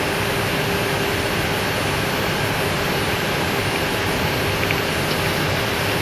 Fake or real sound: real